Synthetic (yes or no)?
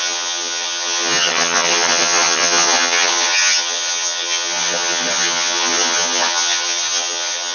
yes